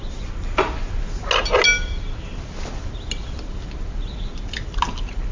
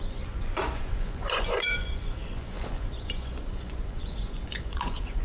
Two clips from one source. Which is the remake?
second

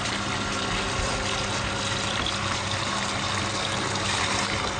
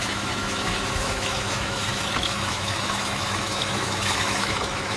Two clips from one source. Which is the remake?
second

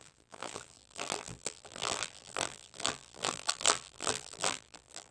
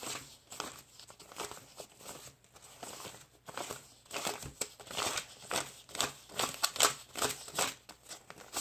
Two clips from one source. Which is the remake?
first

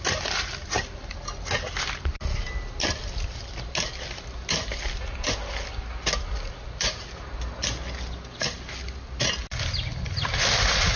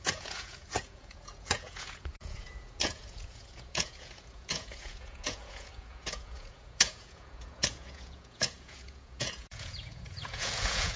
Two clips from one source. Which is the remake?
second